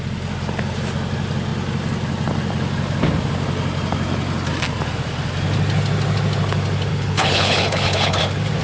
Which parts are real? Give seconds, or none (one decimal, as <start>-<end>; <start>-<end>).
0.0-6.9; 8.2-8.6